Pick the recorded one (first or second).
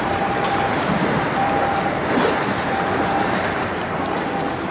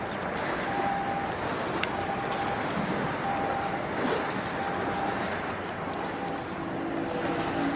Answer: second